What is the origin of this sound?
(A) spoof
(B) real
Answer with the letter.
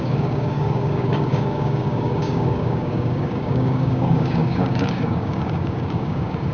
A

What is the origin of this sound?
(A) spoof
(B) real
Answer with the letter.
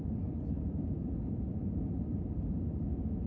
B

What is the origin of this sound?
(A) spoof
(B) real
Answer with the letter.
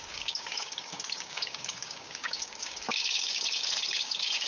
A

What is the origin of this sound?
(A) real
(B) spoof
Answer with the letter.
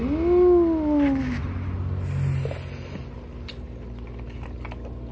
A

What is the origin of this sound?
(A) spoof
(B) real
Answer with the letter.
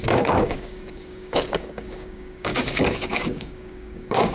A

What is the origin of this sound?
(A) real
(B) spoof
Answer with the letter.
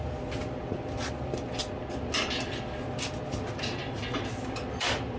A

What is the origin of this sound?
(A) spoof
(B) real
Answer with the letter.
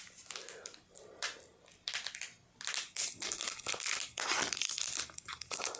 B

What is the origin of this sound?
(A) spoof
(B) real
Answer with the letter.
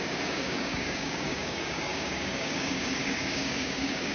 A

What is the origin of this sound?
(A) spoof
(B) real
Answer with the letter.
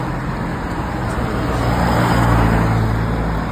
B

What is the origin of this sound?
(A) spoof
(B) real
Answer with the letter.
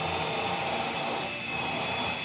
B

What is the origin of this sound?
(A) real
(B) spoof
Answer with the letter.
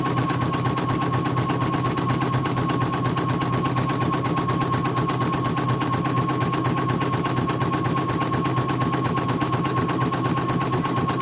A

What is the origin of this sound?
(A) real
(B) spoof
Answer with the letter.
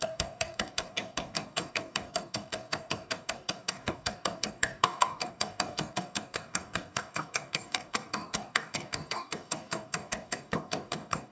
B